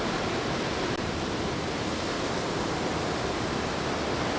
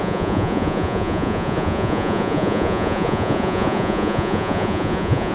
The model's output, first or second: second